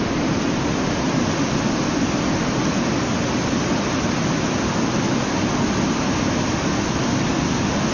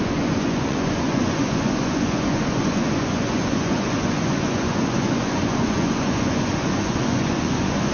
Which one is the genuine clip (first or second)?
first